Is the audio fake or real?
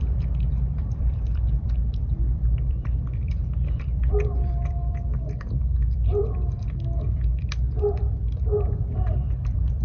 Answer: fake